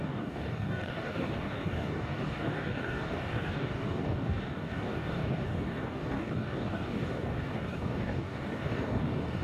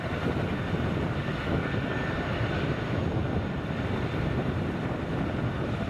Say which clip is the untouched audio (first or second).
second